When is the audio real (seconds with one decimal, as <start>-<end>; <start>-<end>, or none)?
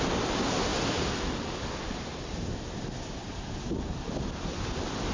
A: 0.0-5.1